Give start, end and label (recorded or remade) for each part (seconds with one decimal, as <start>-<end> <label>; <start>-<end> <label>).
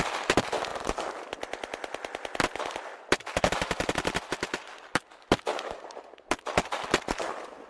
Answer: 0.0-7.7 recorded